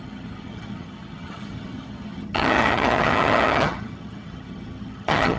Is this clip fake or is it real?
fake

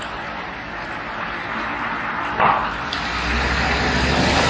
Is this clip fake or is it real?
real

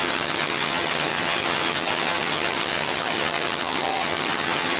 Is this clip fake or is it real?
fake